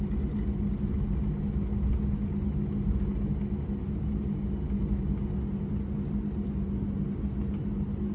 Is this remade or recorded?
recorded